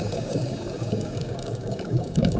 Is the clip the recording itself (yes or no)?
no